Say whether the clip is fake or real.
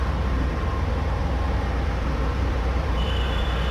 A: fake